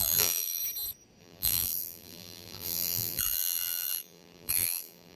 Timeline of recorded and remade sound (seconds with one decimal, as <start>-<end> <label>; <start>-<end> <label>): 0.0-0.6 remade; 0.6-1.2 recorded; 1.2-5.2 remade